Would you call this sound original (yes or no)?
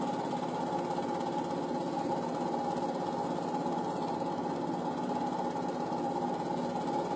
yes